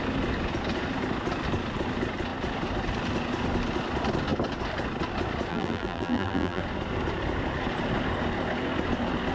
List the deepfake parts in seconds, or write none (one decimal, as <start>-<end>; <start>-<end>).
5.5-6.6